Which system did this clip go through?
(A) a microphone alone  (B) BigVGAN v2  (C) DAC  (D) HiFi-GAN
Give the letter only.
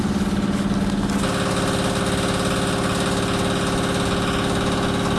A